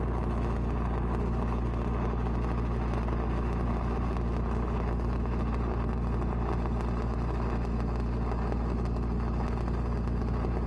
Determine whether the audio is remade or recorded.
recorded